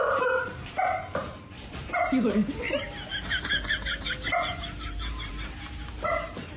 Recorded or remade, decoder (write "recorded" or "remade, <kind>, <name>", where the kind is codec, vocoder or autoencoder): remade, vocoder, BigVGAN v2